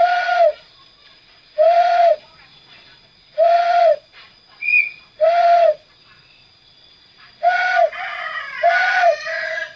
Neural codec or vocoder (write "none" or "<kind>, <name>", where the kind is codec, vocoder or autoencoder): vocoder, Vocos